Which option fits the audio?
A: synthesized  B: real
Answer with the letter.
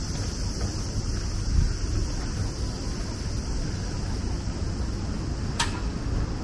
B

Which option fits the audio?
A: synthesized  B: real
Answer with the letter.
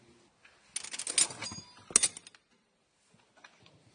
B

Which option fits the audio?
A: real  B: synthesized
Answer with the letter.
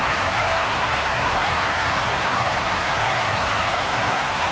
B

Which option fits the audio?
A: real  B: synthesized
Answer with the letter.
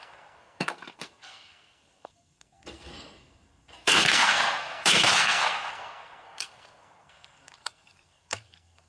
B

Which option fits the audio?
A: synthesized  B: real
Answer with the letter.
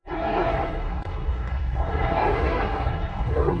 A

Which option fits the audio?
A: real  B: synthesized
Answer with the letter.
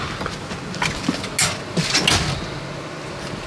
A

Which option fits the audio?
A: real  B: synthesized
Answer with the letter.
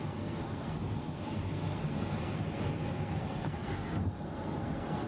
B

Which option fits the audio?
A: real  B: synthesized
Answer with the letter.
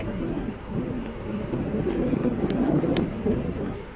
B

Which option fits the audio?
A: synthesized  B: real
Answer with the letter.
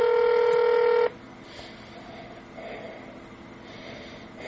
B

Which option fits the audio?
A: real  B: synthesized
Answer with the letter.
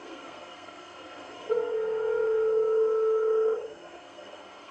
B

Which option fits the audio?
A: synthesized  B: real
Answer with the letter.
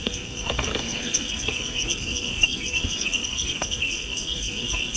A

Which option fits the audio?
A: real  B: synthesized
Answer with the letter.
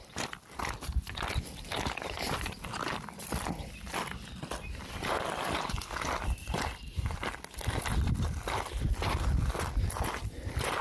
A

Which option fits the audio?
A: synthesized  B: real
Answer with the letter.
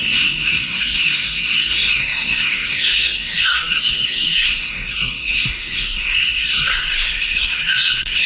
A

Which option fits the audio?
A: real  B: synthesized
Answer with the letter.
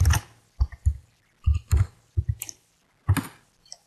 A